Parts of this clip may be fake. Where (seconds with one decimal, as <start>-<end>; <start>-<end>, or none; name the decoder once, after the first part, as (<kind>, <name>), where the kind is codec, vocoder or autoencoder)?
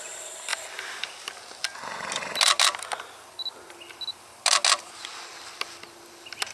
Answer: none